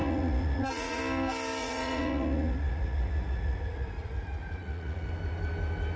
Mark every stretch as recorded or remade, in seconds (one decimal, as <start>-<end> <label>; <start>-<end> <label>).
0.0-1.0 remade; 1.0-1.6 recorded; 1.6-5.1 remade; 5.1-6.0 recorded